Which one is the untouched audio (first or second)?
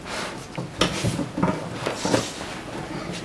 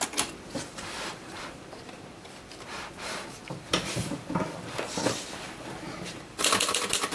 first